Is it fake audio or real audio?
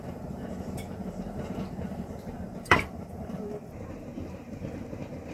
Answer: fake